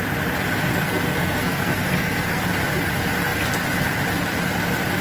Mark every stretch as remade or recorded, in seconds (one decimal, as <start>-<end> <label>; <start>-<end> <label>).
0.0-0.7 recorded; 0.7-2.4 remade; 2.4-5.0 recorded

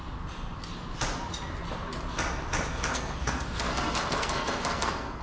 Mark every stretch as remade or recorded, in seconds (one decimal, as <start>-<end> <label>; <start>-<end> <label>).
0.0-2.7 recorded; 2.7-5.2 remade